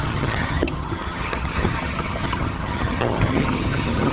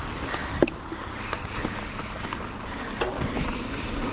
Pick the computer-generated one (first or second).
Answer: first